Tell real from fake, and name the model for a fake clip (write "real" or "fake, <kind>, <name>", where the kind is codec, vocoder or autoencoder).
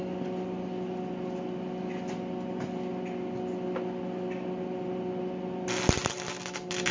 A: real